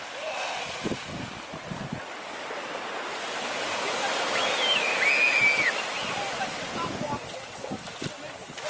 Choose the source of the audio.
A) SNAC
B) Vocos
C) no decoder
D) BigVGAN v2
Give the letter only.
C